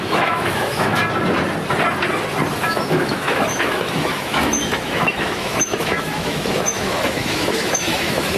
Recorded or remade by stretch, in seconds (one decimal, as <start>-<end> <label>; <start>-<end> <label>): 0.0-1.0 remade; 1.0-2.6 recorded; 2.6-8.4 remade